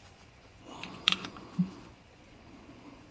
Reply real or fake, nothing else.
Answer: fake